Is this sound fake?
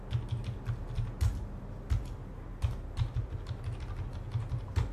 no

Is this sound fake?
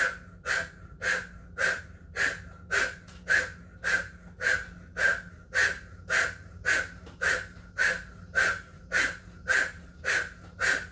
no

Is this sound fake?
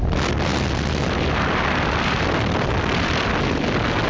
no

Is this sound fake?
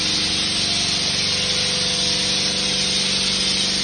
no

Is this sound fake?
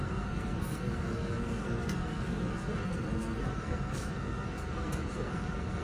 yes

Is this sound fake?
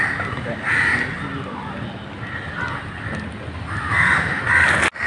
no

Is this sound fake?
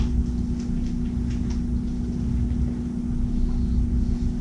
no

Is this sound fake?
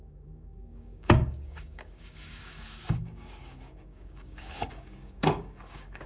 yes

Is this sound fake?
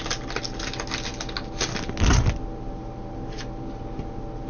no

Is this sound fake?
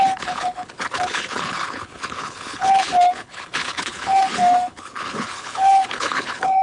yes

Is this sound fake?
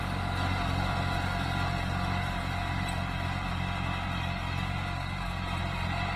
no